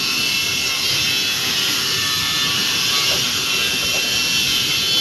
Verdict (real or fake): real